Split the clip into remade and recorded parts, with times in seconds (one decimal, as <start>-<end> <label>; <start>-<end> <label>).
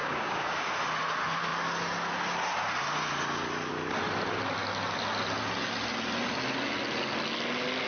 0.0-0.7 remade; 0.7-7.9 recorded